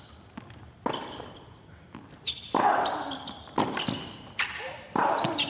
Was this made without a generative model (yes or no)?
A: no